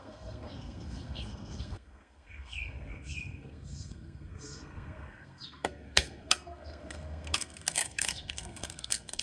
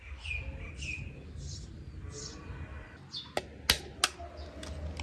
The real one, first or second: second